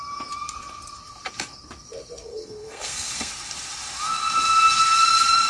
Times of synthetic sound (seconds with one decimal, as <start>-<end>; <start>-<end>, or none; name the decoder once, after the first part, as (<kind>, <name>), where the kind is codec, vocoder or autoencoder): 2.3-3.3 (codec, SNAC)